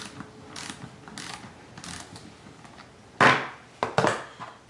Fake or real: real